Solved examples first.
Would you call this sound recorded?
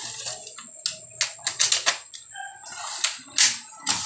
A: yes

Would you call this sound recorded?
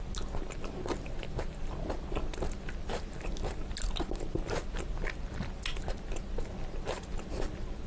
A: yes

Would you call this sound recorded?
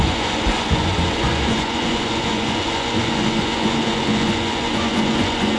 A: no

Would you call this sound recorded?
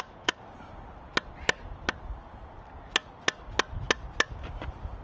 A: yes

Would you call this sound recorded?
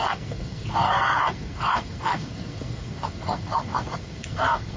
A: no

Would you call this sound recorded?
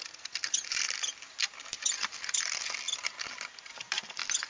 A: yes